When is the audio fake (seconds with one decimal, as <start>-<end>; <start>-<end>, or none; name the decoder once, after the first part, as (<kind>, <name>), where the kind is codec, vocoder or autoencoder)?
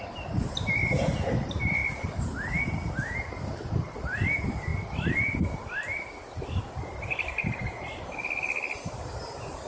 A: none